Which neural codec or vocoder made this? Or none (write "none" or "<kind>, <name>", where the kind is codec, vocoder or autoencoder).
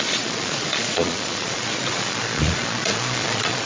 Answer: vocoder, Vocos